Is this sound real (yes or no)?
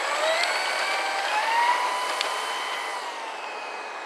no